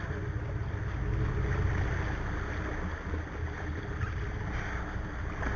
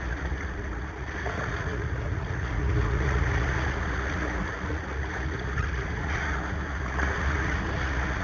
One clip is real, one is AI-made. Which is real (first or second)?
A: first